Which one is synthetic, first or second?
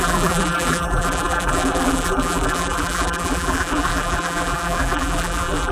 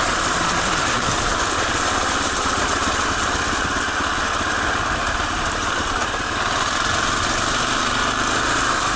first